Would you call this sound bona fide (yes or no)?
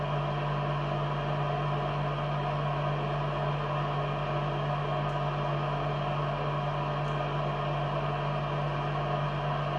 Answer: yes